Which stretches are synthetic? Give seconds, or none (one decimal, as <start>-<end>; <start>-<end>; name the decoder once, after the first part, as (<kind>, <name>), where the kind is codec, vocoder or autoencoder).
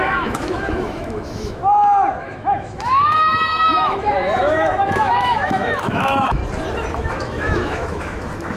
0.0-1.6 (autoencoder, DAC-VAE); 2.2-6.4; 7.0-8.6